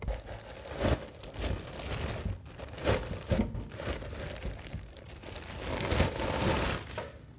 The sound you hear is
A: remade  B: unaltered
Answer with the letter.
B